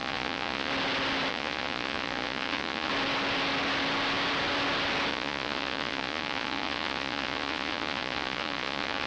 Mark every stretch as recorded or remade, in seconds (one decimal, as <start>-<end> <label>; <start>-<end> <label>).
0.0-0.7 remade; 0.7-1.3 recorded; 1.3-2.9 remade; 2.9-5.1 recorded; 5.1-9.1 remade

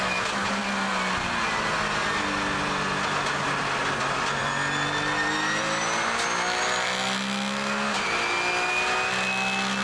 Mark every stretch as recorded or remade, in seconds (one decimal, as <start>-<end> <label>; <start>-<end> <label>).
0.0-9.8 recorded

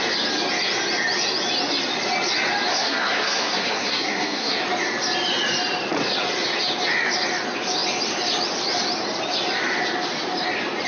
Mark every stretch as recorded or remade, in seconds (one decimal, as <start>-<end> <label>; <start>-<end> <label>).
0.0-2.7 recorded; 2.7-4.6 remade; 4.6-10.9 recorded